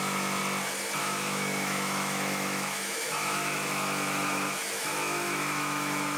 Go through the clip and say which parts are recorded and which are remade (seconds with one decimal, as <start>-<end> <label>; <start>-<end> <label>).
0.0-0.4 remade; 0.4-1.0 recorded; 1.0-6.2 remade